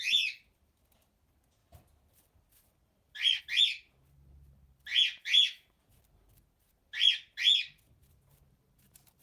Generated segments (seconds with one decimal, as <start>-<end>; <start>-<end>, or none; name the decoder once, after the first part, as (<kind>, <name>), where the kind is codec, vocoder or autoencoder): 4.9-6.0 (vocoder, Vocos)